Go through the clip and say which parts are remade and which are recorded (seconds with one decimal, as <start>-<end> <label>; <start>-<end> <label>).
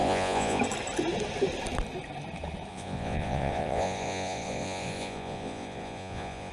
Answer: 0.0-0.6 remade; 0.6-2.7 recorded; 2.7-6.5 remade